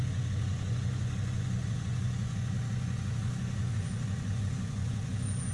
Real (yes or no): no